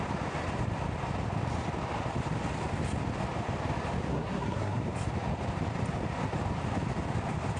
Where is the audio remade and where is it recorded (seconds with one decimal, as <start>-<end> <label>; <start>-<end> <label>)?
0.0-4.1 recorded; 4.1-4.8 remade; 4.8-7.6 recorded

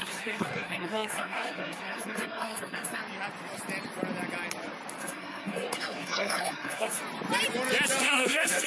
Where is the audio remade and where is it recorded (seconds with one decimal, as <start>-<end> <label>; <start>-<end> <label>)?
0.0-3.0 remade; 3.0-5.0 recorded; 5.0-7.0 remade; 7.0-8.0 recorded; 8.0-8.7 remade

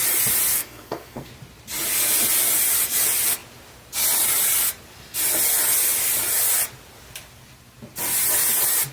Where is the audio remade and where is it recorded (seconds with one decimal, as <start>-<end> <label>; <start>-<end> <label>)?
0.0-0.5 recorded; 0.5-1.3 remade; 1.3-8.9 recorded

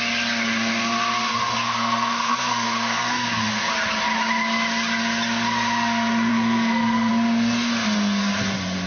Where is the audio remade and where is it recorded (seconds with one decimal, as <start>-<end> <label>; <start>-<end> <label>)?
0.0-1.6 recorded; 1.6-3.6 remade; 3.6-6.3 recorded; 6.3-7.1 remade; 7.1-8.9 recorded